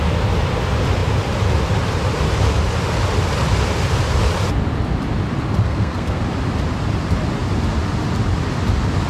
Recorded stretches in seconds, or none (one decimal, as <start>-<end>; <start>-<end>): 0.0-5.6; 6.2-9.1